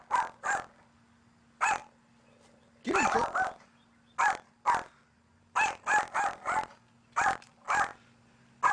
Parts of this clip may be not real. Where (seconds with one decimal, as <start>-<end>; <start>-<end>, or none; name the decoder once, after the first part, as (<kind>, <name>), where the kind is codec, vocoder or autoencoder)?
none